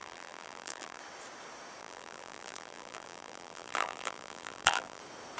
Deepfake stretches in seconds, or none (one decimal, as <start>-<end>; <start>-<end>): 0.0-1.0; 1.8-5.0